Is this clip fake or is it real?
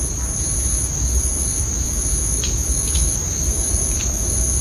fake